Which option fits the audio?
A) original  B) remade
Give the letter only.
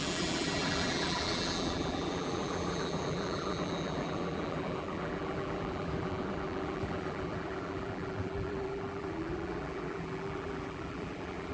B